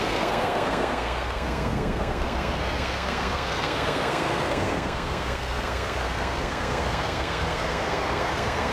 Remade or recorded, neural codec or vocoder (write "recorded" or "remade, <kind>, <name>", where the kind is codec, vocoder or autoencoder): remade, codec, SNAC